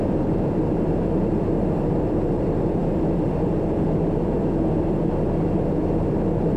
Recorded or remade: remade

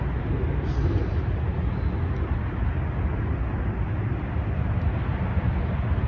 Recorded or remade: recorded